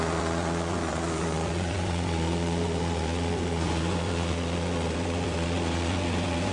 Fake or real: fake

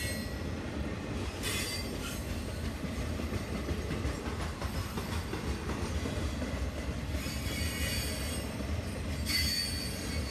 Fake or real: real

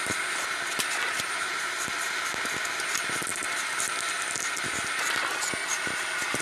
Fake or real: real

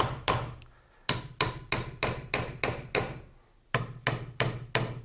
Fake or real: real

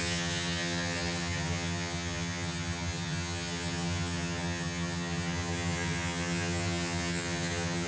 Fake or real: fake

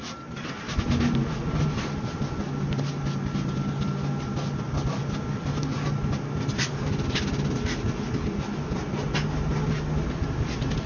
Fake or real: real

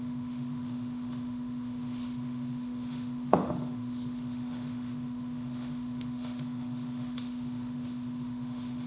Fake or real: fake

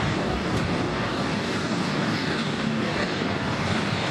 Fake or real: fake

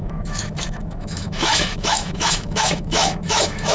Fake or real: fake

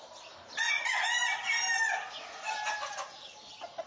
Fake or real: real